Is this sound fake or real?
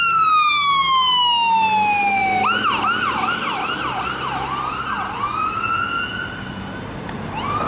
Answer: real